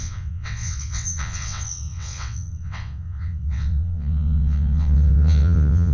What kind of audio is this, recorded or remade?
remade